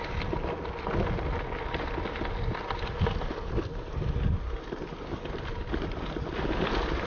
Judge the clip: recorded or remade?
recorded